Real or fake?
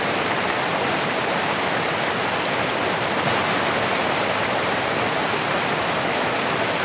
real